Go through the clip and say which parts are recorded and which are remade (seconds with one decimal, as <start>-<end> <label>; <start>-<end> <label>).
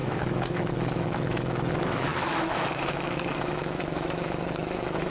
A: 0.0-5.1 remade